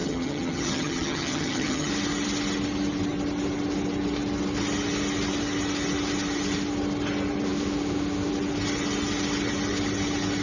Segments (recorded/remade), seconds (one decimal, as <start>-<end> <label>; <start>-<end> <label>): 0.0-1.9 remade; 1.9-10.4 recorded